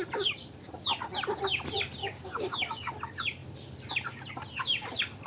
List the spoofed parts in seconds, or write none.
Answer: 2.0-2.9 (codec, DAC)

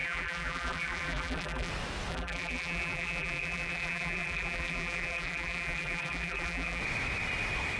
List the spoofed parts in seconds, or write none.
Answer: 0.0-1.7 (vocoder, BigVGAN v2); 2.1-6.8

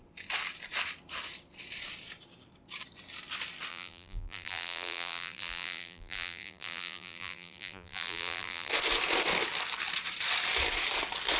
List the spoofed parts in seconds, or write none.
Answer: 3.7-8.7 (vocoder, BigVGAN v2)

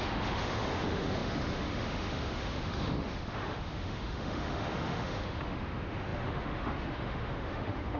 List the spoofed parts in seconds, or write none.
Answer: 0.0-8.0 (autoencoder, DAC-VAE)

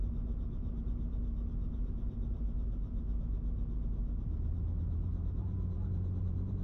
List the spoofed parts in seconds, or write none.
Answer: 0.0-6.6 (vocoder, BigVGAN v2)